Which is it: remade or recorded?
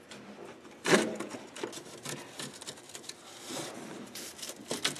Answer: recorded